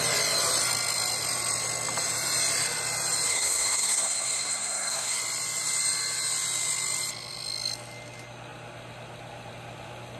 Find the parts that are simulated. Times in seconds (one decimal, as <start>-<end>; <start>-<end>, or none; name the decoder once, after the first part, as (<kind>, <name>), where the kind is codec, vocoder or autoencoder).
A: 3.3-5.2 (codec, SNAC)